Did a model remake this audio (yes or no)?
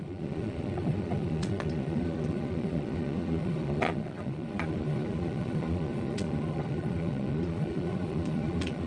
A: yes